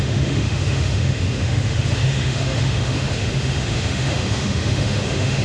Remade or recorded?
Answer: remade